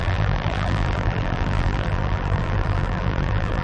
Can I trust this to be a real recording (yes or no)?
no